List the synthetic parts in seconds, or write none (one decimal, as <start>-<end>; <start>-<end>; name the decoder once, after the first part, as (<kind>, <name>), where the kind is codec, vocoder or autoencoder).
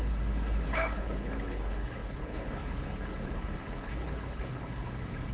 0.0-5.3 (codec, HILCodec)